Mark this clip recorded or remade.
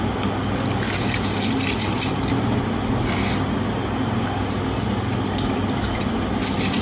recorded